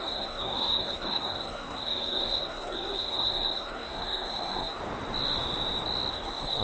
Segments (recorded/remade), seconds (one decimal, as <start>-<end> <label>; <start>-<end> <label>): 0.0-4.8 remade; 4.8-6.1 recorded; 6.1-6.6 remade